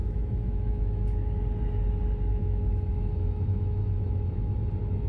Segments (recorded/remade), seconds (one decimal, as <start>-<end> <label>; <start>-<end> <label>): 0.0-1.4 remade; 1.4-2.3 recorded; 2.3-4.5 remade; 4.5-5.1 recorded